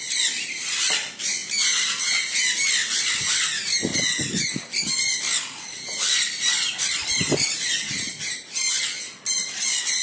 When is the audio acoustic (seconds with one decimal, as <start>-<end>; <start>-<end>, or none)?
1.4-4.8; 7.0-9.3